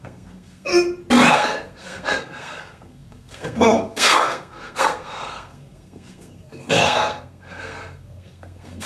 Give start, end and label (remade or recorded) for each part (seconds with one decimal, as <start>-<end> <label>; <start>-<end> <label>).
0.0-0.7 remade; 0.7-1.3 recorded; 1.3-8.9 remade